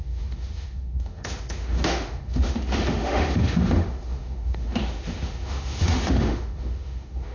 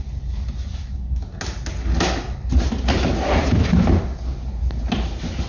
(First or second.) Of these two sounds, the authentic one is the second